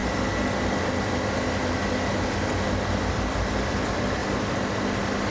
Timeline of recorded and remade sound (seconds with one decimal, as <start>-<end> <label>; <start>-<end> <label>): 0.0-3.1 recorded; 3.1-4.2 remade; 4.2-5.3 recorded